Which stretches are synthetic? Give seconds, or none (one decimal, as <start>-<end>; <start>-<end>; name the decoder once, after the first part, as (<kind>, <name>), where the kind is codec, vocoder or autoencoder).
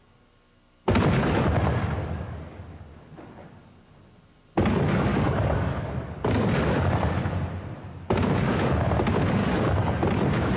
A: 2.0-2.9 (codec, DAC); 5.1-6.9; 9.4-9.9